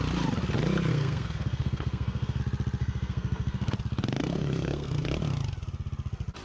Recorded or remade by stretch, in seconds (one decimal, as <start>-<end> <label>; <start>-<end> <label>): 0.0-0.9 recorded; 0.9-2.4 remade; 2.4-2.8 recorded; 2.8-3.7 remade; 3.7-4.2 recorded; 4.2-5.0 remade; 5.0-6.4 recorded